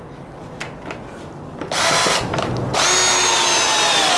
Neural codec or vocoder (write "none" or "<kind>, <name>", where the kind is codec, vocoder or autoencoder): none